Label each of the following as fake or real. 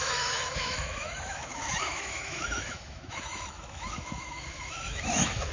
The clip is fake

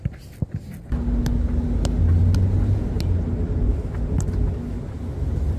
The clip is real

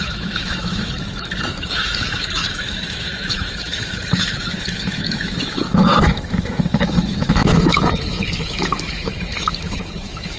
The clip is fake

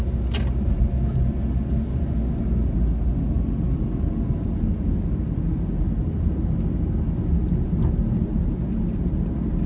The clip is real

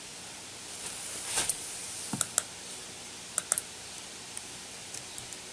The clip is real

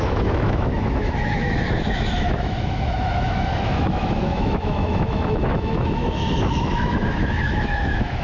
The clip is fake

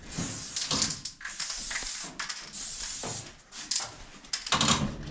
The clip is real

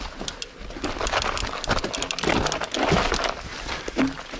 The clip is real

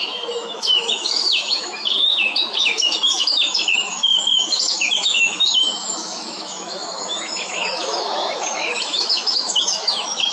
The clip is fake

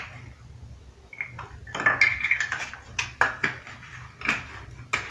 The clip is real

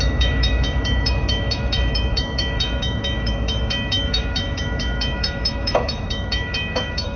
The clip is fake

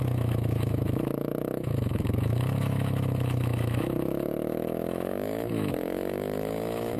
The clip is fake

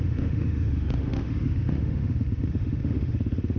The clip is fake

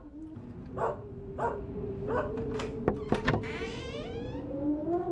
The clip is real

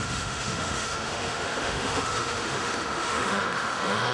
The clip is fake